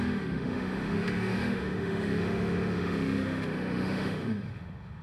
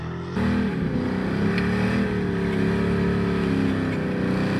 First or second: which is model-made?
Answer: first